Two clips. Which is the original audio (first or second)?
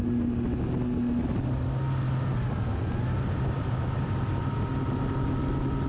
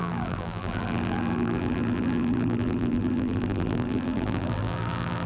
first